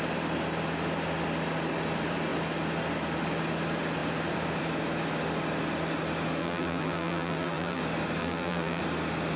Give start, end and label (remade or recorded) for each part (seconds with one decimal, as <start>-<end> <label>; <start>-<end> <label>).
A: 0.0-6.4 recorded; 6.4-7.8 remade; 7.8-8.2 recorded; 8.2-8.8 remade; 8.8-9.4 recorded